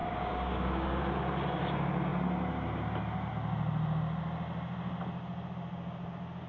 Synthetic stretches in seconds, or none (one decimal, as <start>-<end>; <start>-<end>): 0.0-1.0

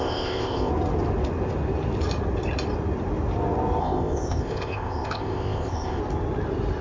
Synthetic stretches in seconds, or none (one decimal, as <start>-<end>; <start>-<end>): 0.0-0.7; 3.8-6.0

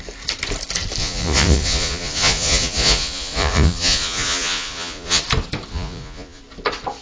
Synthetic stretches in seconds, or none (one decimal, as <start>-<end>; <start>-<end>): 1.0-5.2; 5.7-6.4

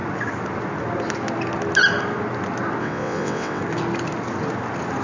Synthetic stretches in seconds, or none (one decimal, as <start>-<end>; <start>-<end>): 2.8-3.6

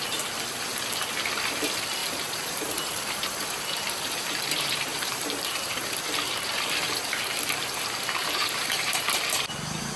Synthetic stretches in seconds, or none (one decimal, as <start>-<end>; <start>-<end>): 2.0-6.0; 8.2-10.0